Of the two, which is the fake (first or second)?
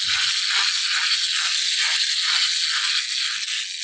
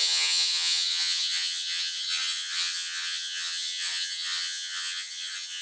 second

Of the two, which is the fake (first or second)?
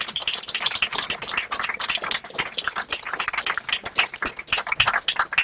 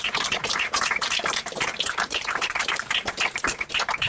second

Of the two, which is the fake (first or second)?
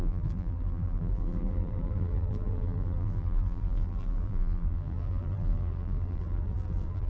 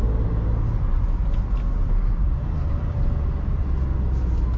first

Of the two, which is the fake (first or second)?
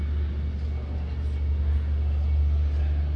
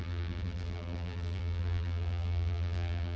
second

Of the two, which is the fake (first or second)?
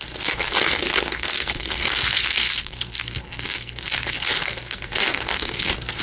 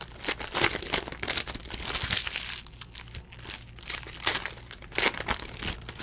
first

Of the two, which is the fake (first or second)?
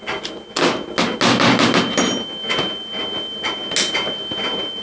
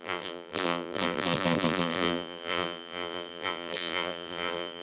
second